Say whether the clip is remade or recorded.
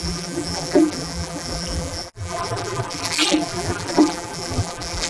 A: remade